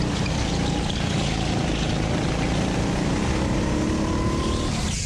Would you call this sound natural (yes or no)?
yes